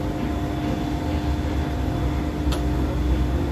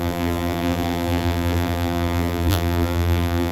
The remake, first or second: second